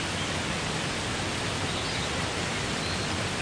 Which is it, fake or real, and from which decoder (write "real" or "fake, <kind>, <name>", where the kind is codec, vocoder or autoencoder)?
real